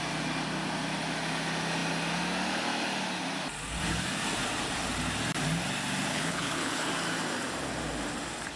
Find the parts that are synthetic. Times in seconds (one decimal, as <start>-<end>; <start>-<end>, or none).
6.1-6.9